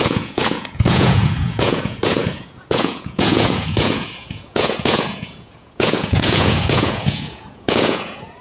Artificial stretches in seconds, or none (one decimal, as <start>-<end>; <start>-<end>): 0.0-8.4